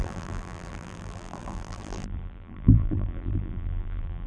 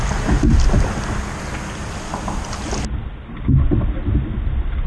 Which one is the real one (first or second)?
second